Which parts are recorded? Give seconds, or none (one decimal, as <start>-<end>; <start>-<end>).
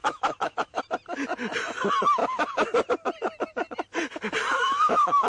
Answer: 0.8-4.5